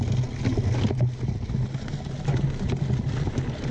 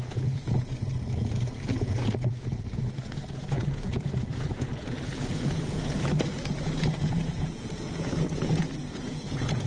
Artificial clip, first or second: second